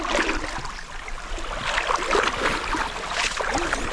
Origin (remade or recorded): recorded